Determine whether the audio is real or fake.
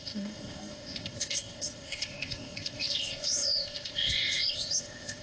fake